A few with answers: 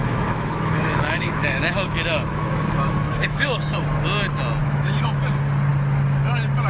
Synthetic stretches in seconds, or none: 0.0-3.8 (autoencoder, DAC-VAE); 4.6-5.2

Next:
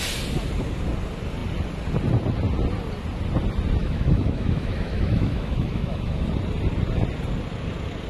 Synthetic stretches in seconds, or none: 3.8-6.3 (autoencoder, DAC-VAE)

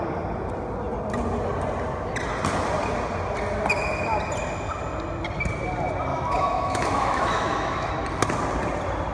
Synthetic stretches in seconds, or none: 6.1-7.9 (autoencoder, DAC-VAE)

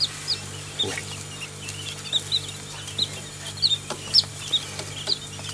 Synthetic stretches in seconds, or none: none

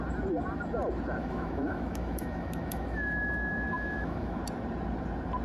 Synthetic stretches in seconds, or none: 1.2-4.4 (autoencoder, DAC-VAE)

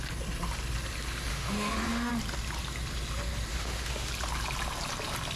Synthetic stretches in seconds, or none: 1.3-2.1 (autoencoder, DAC-VAE); 3.5-4.1

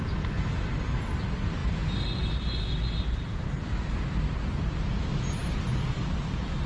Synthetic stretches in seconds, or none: none